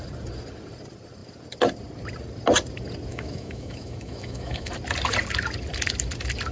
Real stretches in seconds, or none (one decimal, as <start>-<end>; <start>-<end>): 0.0-3.1; 4.7-6.5